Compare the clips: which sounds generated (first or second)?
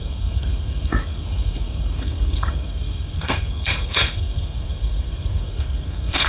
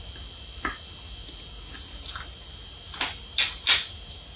first